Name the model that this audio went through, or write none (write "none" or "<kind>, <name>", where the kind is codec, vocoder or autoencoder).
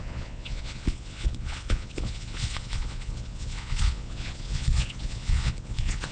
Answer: vocoder, Vocos